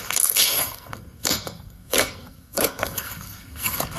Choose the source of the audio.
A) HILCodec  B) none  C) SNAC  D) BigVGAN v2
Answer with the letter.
C